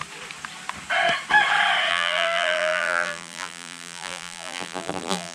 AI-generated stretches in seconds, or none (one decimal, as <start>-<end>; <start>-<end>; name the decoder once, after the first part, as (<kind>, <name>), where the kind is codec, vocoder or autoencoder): 1.9-5.3 (vocoder, BigVGAN v2)